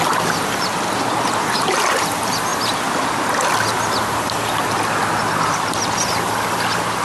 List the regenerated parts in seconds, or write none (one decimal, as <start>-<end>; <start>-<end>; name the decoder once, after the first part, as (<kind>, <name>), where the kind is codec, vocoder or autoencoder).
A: none